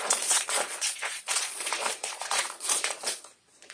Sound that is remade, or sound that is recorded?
remade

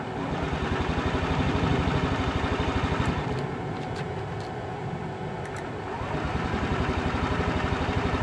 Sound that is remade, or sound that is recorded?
recorded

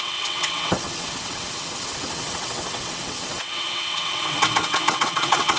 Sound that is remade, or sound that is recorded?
remade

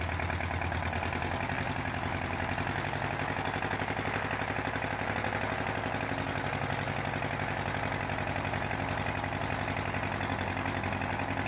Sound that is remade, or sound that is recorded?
recorded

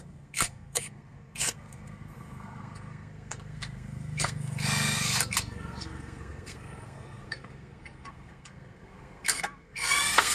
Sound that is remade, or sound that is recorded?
remade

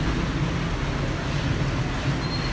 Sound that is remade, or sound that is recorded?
recorded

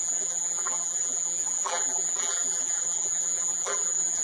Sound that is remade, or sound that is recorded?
remade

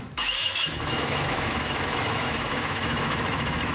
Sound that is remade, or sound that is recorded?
remade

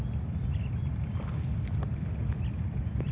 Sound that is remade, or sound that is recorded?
recorded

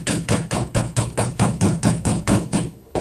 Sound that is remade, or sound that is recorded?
remade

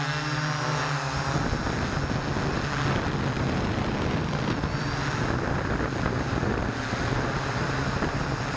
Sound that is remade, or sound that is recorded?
recorded